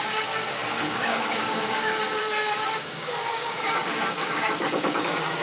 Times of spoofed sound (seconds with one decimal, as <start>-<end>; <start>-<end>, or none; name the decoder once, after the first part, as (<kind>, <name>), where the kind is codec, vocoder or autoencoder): 0.0-5.4 (codec, DAC)